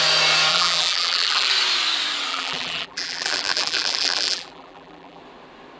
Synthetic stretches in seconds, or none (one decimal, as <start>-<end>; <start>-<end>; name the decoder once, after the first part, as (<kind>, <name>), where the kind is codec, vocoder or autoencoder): 0.5-1.5 (vocoder, BigVGAN v2); 2.3-5.2